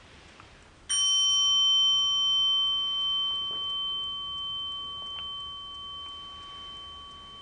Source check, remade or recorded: recorded